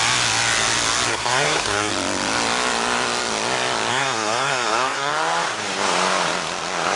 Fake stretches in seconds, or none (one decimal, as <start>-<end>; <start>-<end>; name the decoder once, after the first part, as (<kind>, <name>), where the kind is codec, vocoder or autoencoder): 1.1-1.9 (codec, SNAC); 3.9-5.1